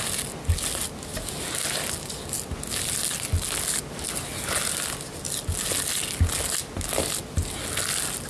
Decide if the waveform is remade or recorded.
recorded